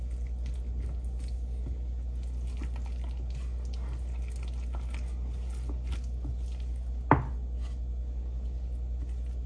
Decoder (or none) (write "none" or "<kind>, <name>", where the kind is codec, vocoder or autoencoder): none